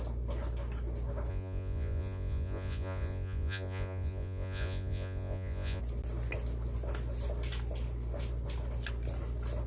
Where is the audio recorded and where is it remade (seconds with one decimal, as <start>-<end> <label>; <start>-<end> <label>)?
0.0-1.3 recorded; 1.3-5.8 remade; 5.8-9.7 recorded